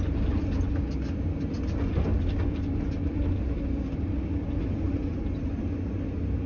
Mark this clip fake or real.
real